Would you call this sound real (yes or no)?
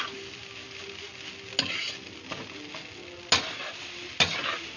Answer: yes